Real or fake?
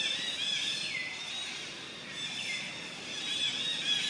real